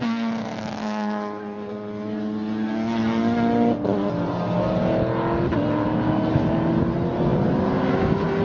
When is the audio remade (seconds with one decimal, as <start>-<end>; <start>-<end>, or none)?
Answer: none